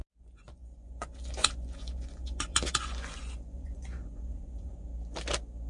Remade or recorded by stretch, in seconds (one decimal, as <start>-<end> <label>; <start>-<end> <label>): 0.0-4.9 remade; 4.9-5.7 recorded